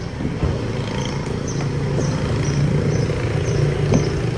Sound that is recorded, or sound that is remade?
recorded